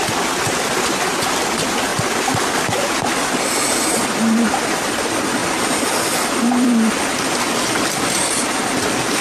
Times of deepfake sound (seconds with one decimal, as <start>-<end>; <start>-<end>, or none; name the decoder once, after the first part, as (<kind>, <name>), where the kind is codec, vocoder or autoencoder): 5.4-7.1 (vocoder, BigVGAN v2)